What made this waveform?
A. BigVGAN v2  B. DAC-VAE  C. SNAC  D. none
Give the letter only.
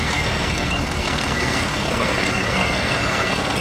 C